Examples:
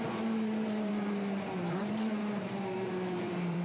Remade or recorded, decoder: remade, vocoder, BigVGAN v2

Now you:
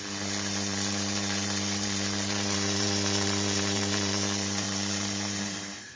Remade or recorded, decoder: remade, vocoder, BigVGAN v2